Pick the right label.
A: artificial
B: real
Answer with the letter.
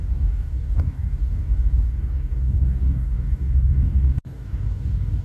A